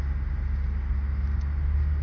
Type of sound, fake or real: real